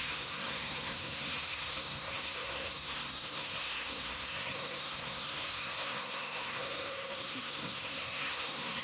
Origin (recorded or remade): remade